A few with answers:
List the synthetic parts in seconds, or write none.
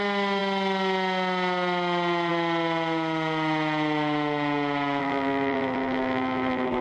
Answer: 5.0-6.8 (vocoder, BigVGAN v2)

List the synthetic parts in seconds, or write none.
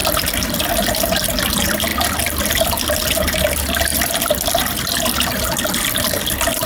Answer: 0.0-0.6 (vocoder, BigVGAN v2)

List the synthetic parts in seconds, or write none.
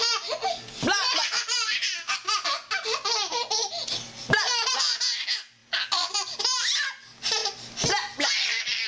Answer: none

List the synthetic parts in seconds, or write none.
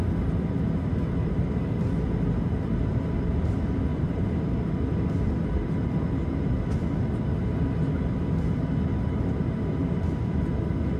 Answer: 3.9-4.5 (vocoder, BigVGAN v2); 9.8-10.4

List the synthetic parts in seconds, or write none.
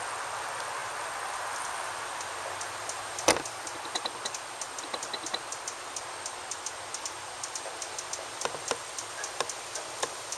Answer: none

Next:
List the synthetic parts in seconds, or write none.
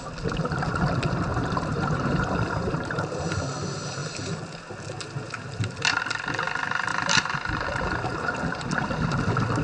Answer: 1.3-3.4 (vocoder, BigVGAN v2); 6.9-7.9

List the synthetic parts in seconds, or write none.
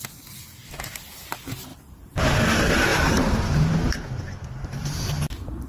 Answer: 1.7-2.3 (vocoder, BigVGAN v2); 2.9-5.1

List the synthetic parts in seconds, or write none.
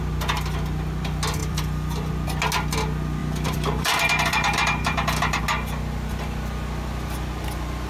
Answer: 1.4-2.1 (vocoder, BigVGAN v2); 3.2-5.4